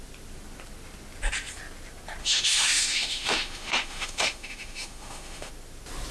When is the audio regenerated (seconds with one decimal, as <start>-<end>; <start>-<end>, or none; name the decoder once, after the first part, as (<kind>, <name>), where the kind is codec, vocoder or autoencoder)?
2.2-5.5 (autoencoder, DAC-VAE)